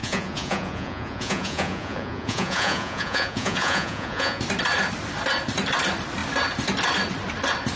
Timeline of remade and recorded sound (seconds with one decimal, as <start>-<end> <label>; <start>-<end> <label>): 0.0-4.4 remade; 4.4-7.8 recorded